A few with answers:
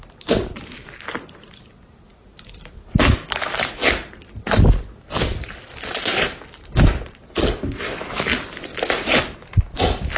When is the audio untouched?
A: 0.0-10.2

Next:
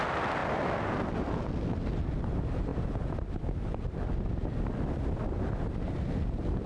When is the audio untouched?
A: 0.0-6.7

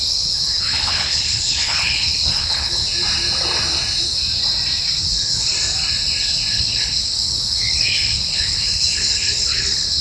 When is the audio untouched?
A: 2.8-5.0; 5.5-6.5

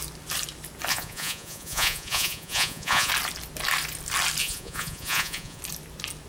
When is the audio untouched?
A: 0.0-0.9; 3.1-4.4; 5.6-6.3

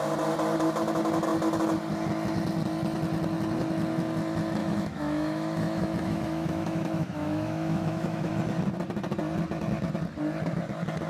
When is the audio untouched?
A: 0.0-4.6; 8.3-11.1

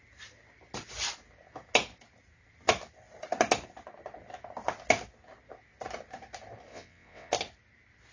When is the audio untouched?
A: 0.0-6.7; 7.3-8.1

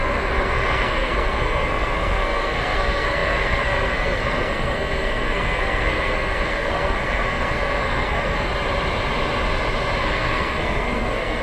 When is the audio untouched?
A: 8.5-10.0

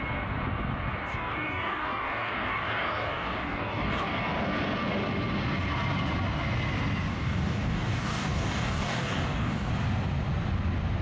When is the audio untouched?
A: 0.0-1.1; 4.2-7.1; 9.7-11.0